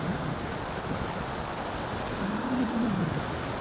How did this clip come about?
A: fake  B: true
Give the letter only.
B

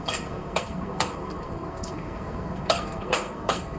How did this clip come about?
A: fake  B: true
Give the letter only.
A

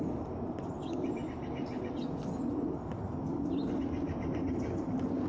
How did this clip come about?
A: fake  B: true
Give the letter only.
B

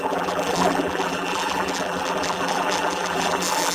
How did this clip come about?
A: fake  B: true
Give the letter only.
A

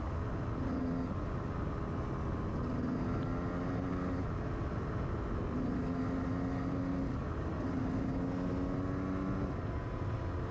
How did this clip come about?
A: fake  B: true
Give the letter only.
B